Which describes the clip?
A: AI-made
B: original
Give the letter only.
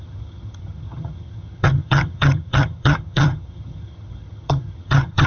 A